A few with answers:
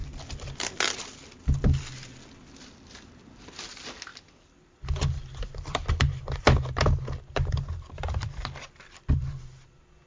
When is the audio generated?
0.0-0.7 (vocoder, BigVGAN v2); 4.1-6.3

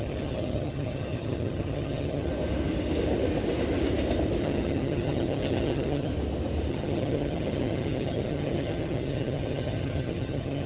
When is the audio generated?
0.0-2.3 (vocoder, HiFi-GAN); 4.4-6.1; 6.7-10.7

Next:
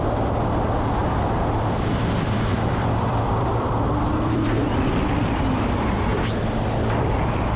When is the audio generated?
1.0-5.6 (vocoder, BigVGAN v2); 6.1-6.6

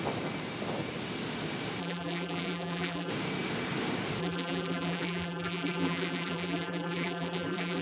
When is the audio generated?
1.8-3.1 (vocoder, BigVGAN v2); 4.2-7.8

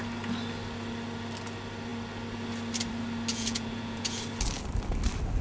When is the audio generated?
3.3-4.2 (vocoder, Vocos)

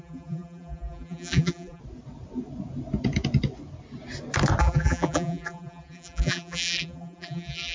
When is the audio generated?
0.0-1.8 (vocoder, BigVGAN v2); 4.6-7.7

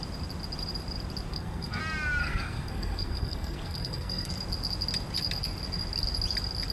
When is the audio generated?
1.3-1.8 (codec, SNAC); 2.2-4.3

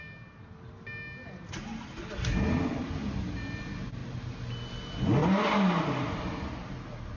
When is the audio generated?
5.2-6.1 (vocoder, BigVGAN v2)